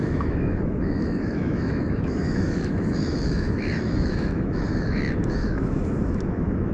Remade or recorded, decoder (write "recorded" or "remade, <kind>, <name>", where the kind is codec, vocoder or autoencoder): remade, autoencoder, DAC-VAE